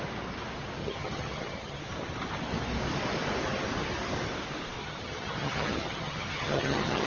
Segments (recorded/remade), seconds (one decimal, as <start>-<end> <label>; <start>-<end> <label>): 0.0-0.8 recorded; 0.8-1.8 remade; 1.8-4.8 recorded; 4.8-7.1 remade